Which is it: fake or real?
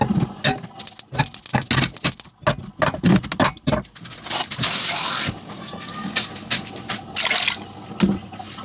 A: real